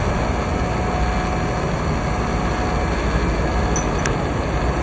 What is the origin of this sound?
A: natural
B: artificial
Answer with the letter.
A